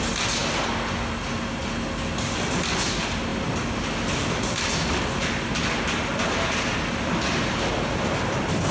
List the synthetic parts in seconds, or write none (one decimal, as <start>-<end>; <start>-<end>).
none